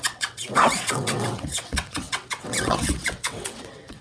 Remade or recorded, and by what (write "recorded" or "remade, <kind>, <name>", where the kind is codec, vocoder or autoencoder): remade, vocoder, WaveNeXt